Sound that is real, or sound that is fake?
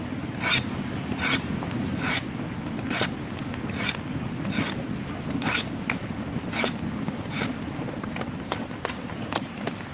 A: real